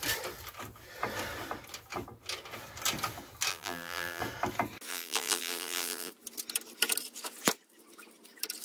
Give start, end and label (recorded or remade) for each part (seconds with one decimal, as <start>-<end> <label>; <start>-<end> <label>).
0.0-3.5 recorded; 3.5-4.2 remade; 4.2-4.9 recorded; 4.9-6.1 remade; 6.1-8.6 recorded